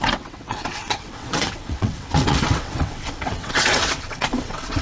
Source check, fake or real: fake